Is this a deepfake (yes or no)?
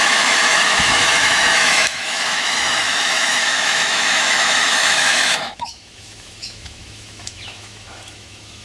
yes